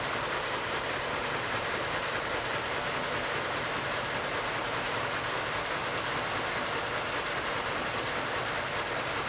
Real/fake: real